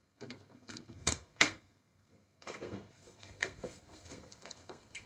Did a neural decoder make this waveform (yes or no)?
yes